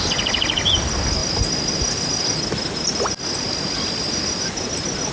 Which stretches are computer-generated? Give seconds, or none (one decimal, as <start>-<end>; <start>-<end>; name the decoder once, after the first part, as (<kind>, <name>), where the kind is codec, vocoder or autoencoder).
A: none